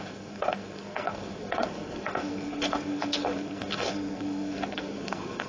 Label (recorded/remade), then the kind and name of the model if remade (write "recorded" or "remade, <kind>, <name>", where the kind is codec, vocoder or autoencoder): remade, codec, SNAC